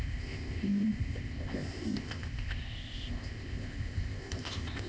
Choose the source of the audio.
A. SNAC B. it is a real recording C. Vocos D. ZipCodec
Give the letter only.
D